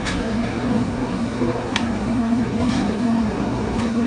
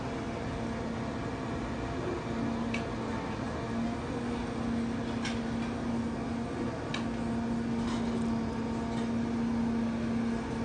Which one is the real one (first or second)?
second